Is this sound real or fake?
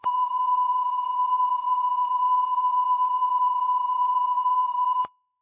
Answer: fake